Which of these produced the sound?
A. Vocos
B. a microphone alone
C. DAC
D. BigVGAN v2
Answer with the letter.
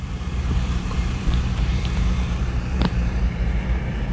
D